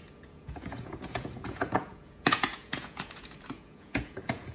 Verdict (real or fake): fake